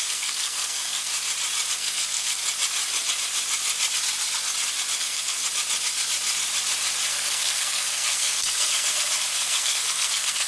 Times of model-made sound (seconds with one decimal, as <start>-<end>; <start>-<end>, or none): 0.0-1.1; 1.7-2.4; 5.0-5.4; 7.1-10.5